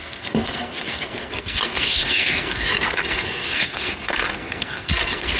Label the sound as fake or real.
fake